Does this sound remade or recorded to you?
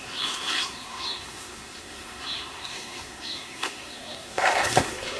remade